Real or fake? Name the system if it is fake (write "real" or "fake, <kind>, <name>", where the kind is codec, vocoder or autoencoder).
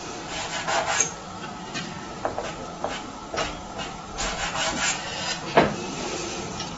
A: real